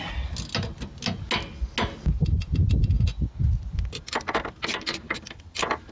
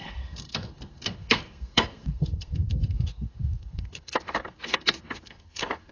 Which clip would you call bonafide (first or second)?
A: first